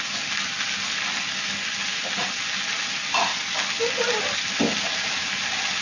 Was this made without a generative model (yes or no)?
yes